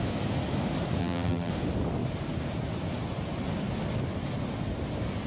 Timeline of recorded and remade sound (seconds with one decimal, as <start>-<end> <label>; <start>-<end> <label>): 0.0-1.0 recorded; 1.0-1.5 remade; 1.5-5.3 recorded